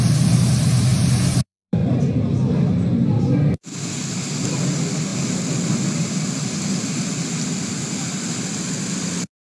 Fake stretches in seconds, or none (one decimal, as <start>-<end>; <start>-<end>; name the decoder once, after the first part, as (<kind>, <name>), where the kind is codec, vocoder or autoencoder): 0.9-2.1 (vocoder, BigVGAN v2)